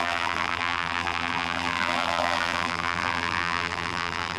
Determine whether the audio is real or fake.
fake